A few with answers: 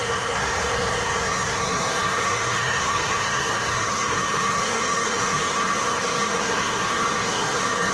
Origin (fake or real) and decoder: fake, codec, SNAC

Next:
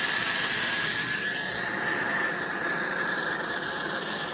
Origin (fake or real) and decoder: real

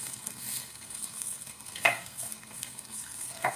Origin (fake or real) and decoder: fake, codec, SNAC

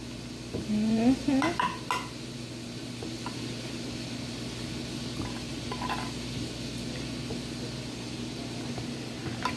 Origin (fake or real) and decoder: real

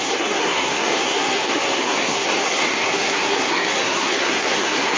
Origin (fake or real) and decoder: fake, codec, SNAC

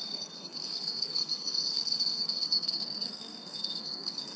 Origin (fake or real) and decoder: fake, codec, SNAC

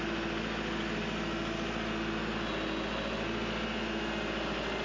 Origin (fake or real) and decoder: real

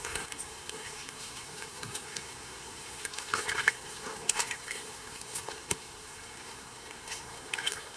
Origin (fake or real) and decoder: fake, codec, SNAC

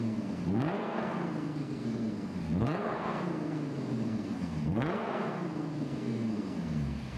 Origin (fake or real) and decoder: fake, codec, SNAC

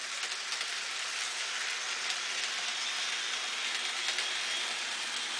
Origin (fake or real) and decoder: real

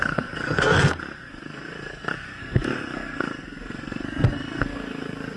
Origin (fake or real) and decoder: fake, codec, SNAC